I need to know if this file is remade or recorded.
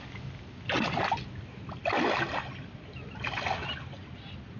recorded